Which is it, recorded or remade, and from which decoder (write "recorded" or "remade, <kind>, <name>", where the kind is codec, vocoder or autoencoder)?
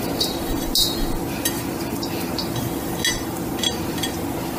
recorded